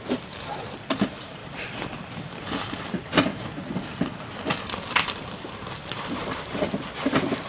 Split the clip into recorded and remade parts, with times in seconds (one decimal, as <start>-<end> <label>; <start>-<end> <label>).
0.0-3.3 remade; 3.3-4.5 recorded; 4.5-7.5 remade